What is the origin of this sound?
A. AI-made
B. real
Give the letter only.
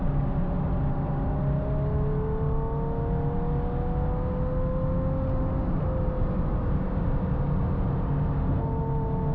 B